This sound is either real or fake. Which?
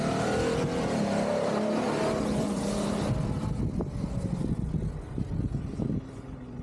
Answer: real